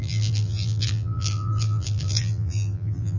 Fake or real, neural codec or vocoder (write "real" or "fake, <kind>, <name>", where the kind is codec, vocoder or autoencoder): fake, vocoder, BigVGAN v2